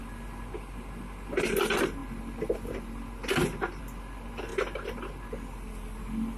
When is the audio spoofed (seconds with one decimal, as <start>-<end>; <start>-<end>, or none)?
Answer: none

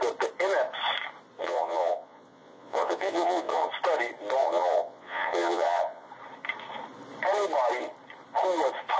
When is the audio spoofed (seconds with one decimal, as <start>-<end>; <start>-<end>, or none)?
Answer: 1.4-3.7; 4.4-6.1

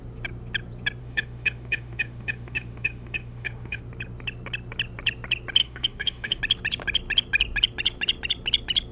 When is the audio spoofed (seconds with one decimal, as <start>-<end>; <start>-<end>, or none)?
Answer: 1.0-3.8; 5.6-6.4

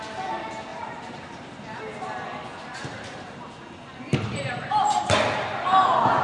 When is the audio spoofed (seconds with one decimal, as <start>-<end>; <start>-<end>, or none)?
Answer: 0.7-1.8; 2.5-3.5; 4.1-5.0